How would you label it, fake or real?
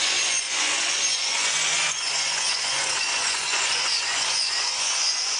fake